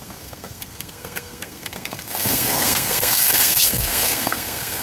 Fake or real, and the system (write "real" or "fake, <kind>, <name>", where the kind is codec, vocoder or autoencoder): fake, codec, SNAC